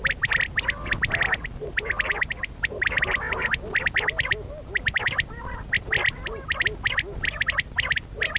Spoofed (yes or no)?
no